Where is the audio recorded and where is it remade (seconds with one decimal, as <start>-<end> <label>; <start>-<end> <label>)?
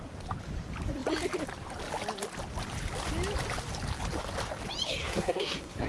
0.0-5.0 recorded; 5.0-5.9 remade